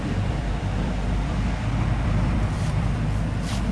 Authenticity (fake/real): fake